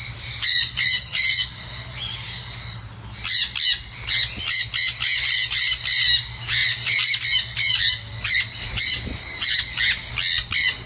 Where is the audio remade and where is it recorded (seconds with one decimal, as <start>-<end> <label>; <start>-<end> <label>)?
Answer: 0.0-10.9 recorded